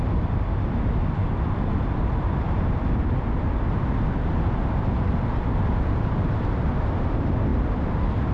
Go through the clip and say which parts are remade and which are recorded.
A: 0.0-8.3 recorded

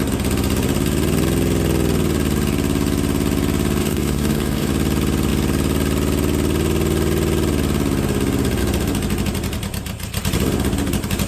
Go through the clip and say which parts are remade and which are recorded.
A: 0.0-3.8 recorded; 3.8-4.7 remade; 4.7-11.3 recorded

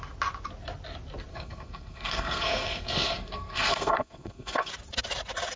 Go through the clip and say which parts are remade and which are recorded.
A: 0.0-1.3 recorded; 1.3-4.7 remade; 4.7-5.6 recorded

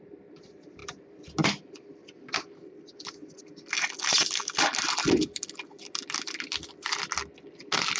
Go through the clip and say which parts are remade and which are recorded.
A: 0.0-8.0 recorded

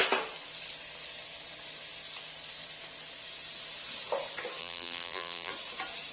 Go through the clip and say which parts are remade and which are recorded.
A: 0.0-4.6 recorded; 4.6-5.5 remade; 5.5-6.1 recorded

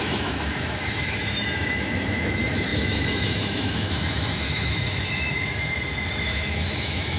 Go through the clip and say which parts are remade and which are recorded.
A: 0.0-7.2 remade

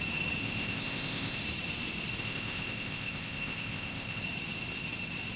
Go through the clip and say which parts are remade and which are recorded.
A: 0.0-0.4 recorded; 0.4-1.4 remade; 1.4-2.2 recorded; 2.2-4.2 remade; 4.2-5.4 recorded

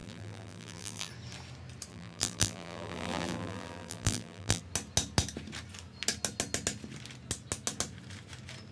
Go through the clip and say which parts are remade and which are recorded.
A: 0.0-1.1 remade; 1.1-1.9 recorded; 1.9-4.6 remade; 4.6-8.7 recorded